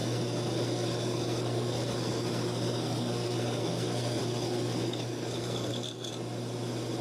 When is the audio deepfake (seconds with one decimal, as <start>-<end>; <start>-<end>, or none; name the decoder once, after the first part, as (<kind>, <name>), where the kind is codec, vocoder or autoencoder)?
0.0-6.1 (codec, SNAC)